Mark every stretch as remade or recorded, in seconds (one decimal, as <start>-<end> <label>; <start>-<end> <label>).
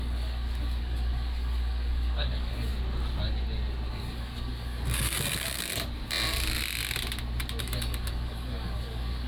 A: 0.0-2.7 remade; 2.7-3.9 recorded; 3.9-5.7 remade; 5.7-7.6 recorded; 7.6-9.3 remade